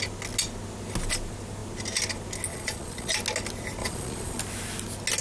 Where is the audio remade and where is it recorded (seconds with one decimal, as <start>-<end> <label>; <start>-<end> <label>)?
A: 0.0-2.5 recorded; 2.5-3.1 remade; 3.1-3.8 recorded; 3.8-4.4 remade; 4.4-5.2 recorded